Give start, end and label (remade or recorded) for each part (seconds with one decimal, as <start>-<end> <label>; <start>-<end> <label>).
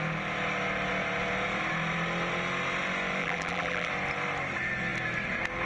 0.0-3.2 recorded; 3.2-3.9 remade; 3.9-5.7 recorded